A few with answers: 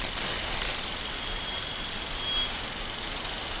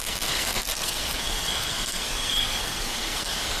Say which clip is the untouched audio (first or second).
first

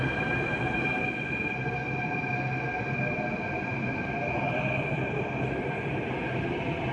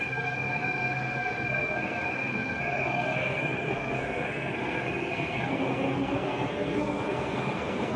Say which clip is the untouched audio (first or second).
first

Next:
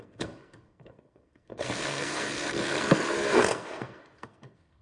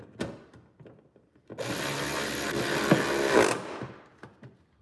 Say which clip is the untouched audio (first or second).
second